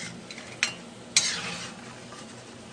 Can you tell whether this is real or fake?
real